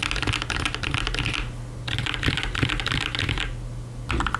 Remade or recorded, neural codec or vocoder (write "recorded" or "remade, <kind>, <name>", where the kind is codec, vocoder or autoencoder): recorded